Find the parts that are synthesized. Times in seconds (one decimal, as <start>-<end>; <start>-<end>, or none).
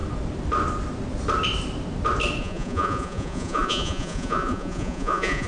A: 2.4-5.5